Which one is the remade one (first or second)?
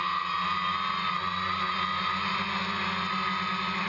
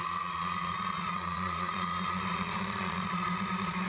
second